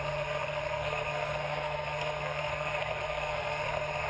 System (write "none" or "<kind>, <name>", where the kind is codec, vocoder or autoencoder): codec, SNAC